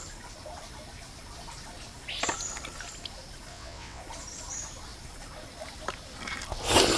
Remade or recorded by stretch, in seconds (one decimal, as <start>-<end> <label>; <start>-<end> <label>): 0.0-3.5 recorded; 3.5-4.0 remade; 4.0-7.0 recorded